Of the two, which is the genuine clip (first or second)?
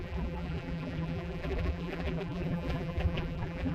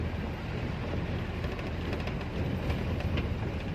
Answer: second